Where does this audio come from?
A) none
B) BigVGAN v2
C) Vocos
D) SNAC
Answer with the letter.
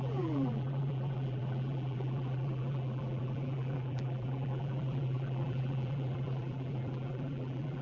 B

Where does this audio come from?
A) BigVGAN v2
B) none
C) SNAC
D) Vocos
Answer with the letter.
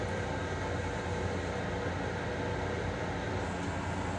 B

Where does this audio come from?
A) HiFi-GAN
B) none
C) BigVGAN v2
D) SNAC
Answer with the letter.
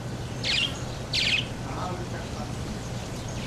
B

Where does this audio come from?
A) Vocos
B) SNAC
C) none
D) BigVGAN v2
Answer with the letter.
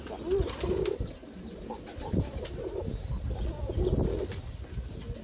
C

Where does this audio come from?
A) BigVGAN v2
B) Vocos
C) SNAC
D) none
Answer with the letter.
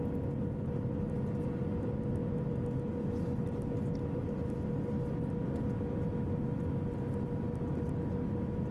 D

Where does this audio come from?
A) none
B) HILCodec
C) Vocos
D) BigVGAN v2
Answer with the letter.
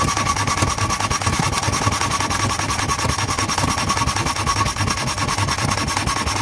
A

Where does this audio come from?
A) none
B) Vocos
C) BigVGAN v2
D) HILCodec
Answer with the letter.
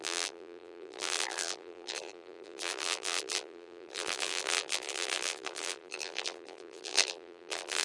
C